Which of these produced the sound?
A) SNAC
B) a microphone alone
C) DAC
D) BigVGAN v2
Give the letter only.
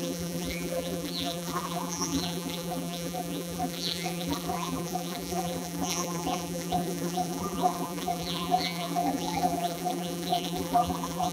D